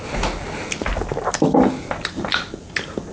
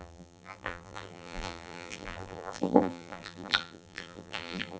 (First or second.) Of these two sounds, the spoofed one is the second